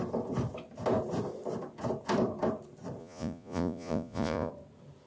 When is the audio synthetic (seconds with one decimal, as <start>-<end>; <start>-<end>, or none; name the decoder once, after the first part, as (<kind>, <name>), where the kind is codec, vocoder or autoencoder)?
3.0-4.5 (vocoder, Vocos)